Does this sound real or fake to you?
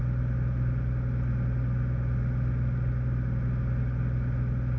real